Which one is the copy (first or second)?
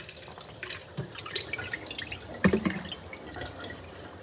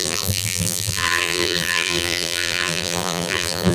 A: second